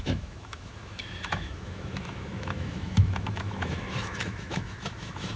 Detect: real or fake fake